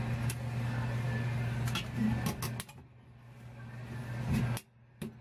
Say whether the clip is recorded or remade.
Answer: recorded